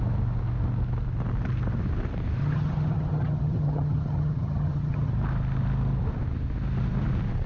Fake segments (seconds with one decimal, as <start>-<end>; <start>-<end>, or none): 2.4-5.1

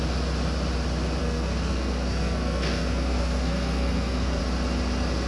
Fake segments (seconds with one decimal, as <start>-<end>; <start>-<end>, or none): 1.2-4.4

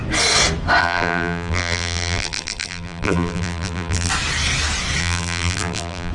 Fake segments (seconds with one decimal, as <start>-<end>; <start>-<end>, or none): 0.8-4.1; 5.0-6.1

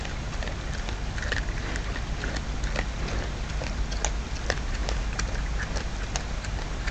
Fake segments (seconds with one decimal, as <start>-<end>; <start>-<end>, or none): none

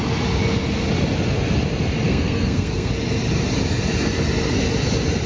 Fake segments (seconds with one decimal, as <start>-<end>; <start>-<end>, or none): 2.1-2.9

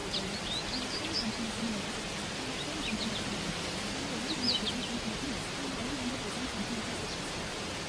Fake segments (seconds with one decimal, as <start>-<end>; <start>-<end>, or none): 4.7-5.8; 6.3-7.9

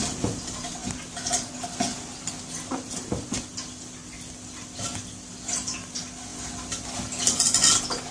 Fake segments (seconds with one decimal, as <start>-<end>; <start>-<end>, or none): none

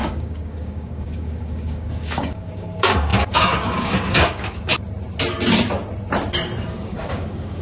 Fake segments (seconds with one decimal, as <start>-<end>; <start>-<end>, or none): 0.0-4.7; 6.7-7.6